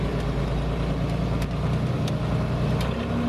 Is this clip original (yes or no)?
yes